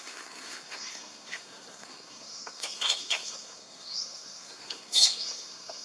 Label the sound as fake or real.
fake